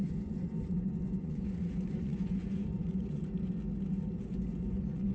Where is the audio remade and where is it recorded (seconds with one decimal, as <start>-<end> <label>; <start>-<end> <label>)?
0.0-3.2 remade; 3.2-4.2 recorded; 4.2-5.1 remade